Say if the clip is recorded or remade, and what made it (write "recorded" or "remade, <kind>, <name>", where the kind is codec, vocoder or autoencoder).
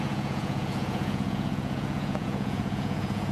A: remade, vocoder, Vocos